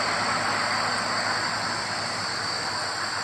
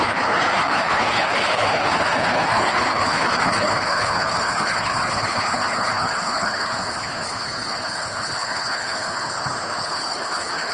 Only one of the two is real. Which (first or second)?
first